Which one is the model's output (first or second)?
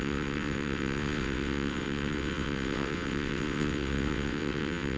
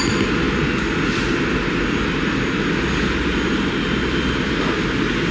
first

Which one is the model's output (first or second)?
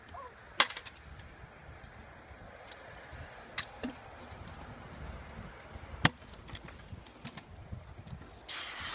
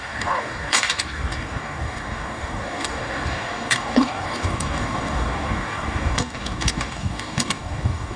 second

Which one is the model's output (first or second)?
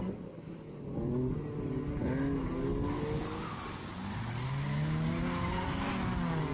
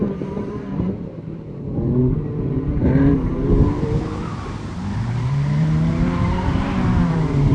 second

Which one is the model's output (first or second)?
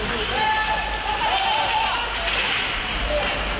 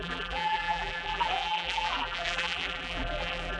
second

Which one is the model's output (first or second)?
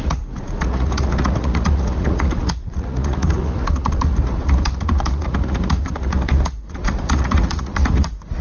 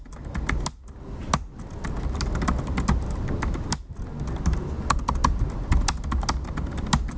first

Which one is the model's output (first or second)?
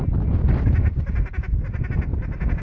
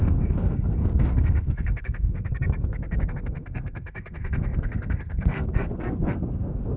second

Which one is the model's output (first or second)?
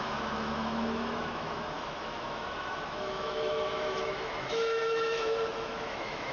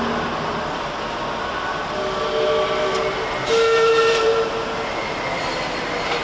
first